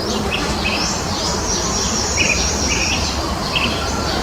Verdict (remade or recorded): recorded